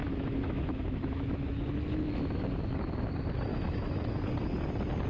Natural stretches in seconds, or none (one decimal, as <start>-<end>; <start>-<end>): 3.1-3.5; 4.2-5.1